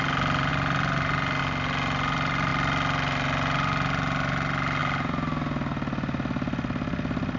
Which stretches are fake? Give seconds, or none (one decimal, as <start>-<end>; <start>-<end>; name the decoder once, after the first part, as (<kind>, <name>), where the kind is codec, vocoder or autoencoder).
none